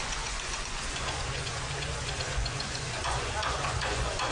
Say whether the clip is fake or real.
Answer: fake